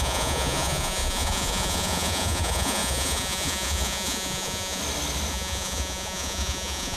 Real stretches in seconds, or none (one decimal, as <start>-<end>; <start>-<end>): 4.8-5.3